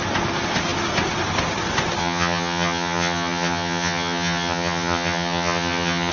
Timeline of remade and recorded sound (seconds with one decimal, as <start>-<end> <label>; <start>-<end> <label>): 0.0-2.0 recorded; 2.0-6.1 remade